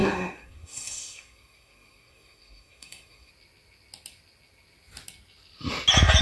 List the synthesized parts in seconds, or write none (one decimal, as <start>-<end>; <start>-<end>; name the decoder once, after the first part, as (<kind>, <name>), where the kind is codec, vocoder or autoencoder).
0.0-3.3 (codec, SNAC)